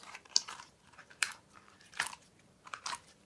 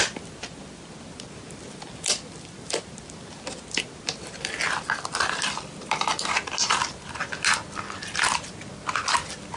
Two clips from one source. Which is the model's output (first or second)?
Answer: first